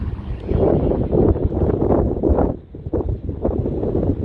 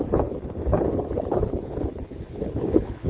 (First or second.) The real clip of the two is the first